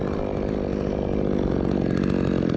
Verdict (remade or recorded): recorded